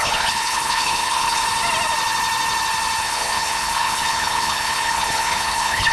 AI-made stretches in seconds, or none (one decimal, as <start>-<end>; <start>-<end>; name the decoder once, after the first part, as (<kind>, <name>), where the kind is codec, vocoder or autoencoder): 0.0-1.4 (codec, HILCodec); 3.0-5.9